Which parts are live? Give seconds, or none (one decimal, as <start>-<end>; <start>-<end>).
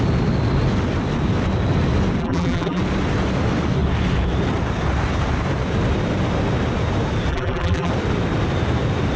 0.0-2.2; 2.8-7.3; 7.9-9.2